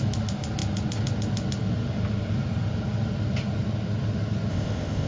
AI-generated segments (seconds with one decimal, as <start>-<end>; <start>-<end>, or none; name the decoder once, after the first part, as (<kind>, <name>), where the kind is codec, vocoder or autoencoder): 4.5-5.1 (codec, ZipCodec)